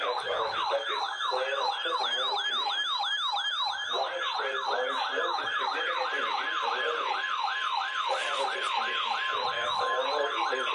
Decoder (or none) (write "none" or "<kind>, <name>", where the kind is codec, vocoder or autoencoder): none